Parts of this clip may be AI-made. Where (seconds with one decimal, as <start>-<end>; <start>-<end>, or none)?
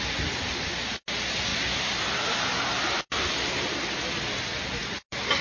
none